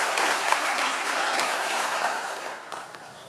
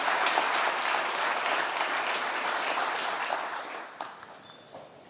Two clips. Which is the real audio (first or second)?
second